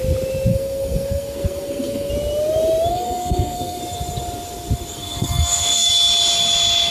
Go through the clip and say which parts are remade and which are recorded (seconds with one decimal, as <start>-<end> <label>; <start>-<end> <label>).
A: 0.0-0.5 recorded; 0.5-2.1 remade; 2.1-2.9 recorded; 2.9-3.8 remade; 3.8-4.9 recorded; 4.9-5.9 remade; 5.9-6.9 recorded